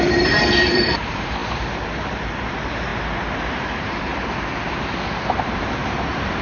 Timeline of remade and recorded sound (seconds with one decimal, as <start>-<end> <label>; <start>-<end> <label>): 0.0-2.9 remade; 2.9-3.5 recorded; 3.5-4.1 remade; 4.1-4.7 recorded; 4.7-6.4 remade

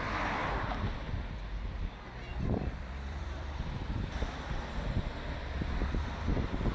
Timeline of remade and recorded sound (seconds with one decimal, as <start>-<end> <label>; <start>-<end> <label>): 0.0-2.3 recorded; 2.3-4.6 remade; 4.6-6.7 recorded